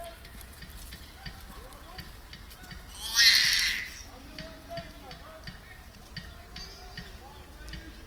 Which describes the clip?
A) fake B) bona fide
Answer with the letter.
B